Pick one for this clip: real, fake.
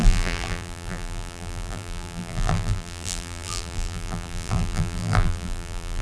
fake